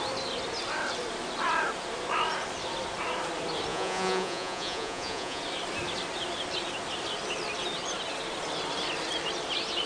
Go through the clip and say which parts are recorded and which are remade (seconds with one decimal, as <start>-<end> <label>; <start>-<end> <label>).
0.0-3.7 recorded; 3.7-5.4 remade; 5.4-9.9 recorded